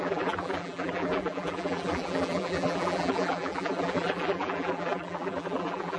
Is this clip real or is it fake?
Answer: fake